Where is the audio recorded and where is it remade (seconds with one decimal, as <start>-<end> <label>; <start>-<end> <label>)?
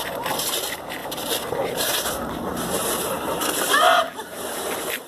0.0-1.0 recorded; 1.0-4.1 remade; 4.1-5.1 recorded